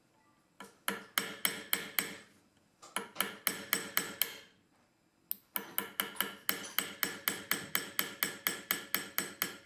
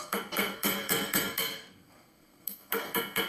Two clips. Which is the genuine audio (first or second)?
first